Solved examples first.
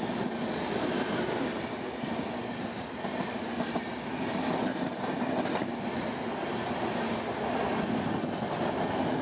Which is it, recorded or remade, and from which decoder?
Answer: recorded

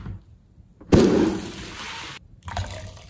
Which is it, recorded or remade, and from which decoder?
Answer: recorded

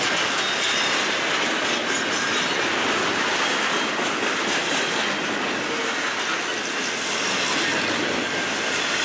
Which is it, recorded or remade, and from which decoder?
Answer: recorded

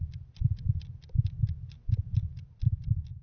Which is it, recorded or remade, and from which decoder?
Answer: remade, vocoder, BigVGAN v2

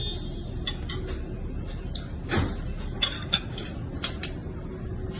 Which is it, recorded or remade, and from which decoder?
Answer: recorded